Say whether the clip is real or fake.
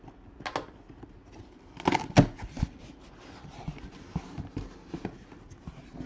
real